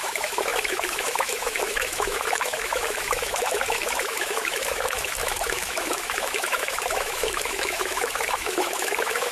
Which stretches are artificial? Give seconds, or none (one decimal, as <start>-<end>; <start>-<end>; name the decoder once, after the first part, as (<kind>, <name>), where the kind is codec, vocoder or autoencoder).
0.0-9.3 (autoencoder, DAC-VAE)

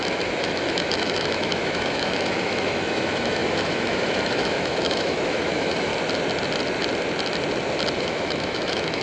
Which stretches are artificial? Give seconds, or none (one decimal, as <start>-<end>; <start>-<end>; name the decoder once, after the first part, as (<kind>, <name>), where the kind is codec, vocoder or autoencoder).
0.0-5.9 (autoencoder, DAC-VAE); 8.0-9.0

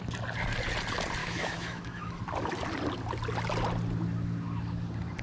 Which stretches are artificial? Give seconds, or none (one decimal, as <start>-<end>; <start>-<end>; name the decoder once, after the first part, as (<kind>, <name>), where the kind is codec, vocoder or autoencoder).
1.2-2.2 (autoencoder, DAC-VAE)

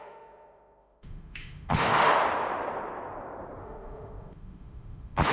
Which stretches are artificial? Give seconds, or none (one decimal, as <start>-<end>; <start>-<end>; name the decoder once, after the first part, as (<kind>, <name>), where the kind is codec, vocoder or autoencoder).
0.0-2.2 (autoencoder, DAC-VAE); 3.6-5.3

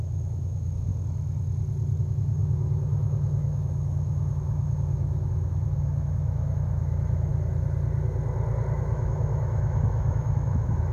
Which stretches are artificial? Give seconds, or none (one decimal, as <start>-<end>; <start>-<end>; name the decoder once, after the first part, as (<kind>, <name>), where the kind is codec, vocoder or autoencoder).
0.0-0.9 (autoencoder, DAC-VAE); 2.0-7.3; 8.8-10.9